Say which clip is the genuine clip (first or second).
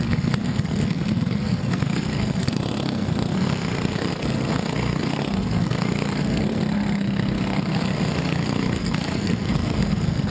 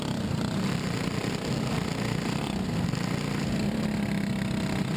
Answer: second